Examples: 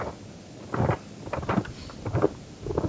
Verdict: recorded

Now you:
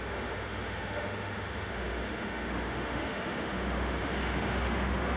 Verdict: remade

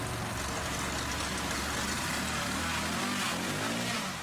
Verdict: recorded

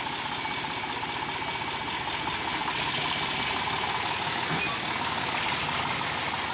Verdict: recorded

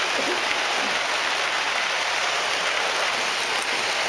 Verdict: recorded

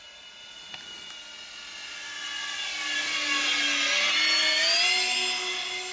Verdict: recorded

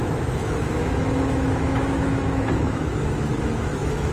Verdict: remade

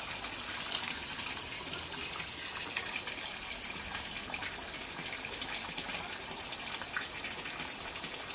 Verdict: recorded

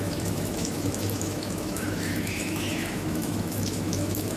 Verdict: remade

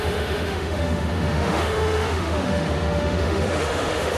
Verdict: remade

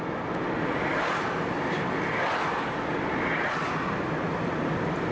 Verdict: recorded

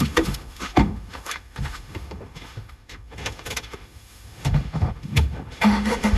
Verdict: remade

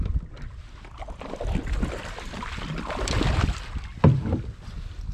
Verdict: recorded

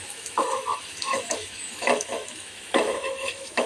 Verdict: remade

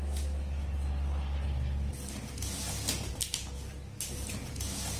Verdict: recorded